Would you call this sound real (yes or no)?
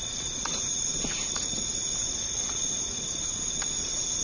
no